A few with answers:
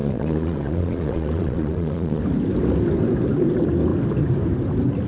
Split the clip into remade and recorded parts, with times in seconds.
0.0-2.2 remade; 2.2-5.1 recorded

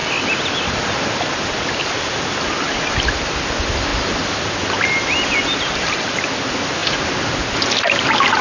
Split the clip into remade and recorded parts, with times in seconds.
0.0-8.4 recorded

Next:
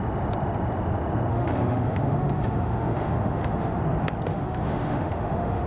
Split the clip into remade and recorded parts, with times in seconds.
0.0-1.3 recorded; 1.3-3.8 remade; 3.8-4.3 recorded; 4.3-5.7 remade

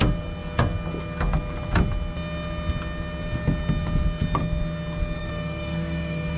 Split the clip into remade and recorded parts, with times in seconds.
0.0-5.2 recorded; 5.2-6.4 remade